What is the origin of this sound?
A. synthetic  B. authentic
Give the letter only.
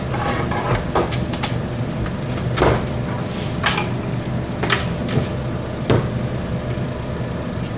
B